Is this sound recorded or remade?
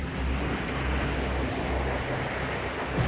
recorded